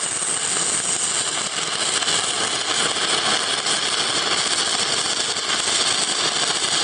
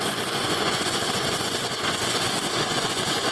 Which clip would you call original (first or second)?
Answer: first